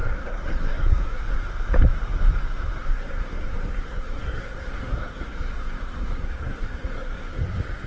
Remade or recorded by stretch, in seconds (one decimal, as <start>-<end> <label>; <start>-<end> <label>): 0.0-1.2 remade; 1.2-2.8 recorded; 2.8-7.4 remade; 7.4-7.9 recorded